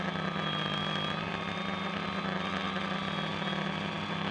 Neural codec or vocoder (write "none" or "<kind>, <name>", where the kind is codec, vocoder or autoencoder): none